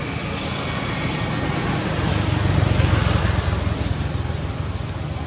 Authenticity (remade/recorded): recorded